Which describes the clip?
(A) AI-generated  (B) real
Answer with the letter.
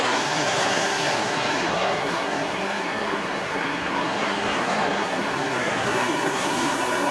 A